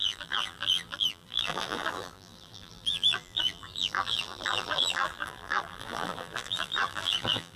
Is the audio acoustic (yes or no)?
no